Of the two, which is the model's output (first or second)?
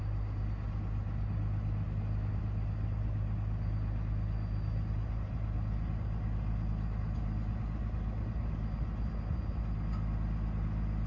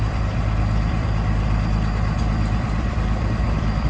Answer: second